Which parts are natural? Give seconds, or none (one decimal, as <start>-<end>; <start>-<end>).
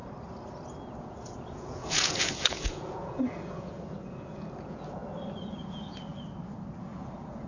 0.0-1.0; 5.0-5.5; 6.1-6.8